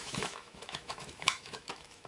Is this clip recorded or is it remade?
remade